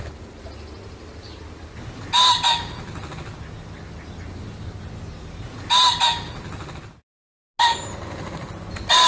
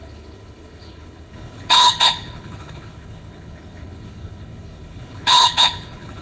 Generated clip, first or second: second